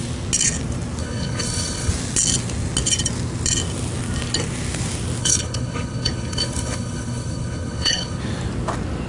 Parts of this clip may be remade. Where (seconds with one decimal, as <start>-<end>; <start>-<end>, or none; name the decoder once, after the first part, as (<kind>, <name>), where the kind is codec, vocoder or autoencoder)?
1.0-1.9 (codec, HILCodec); 5.2-8.2